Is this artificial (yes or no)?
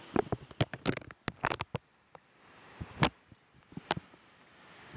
no